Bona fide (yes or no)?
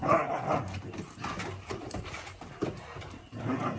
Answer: no